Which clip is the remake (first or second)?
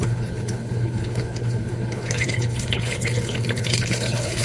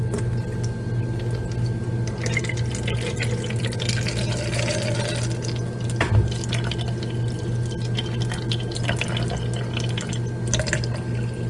first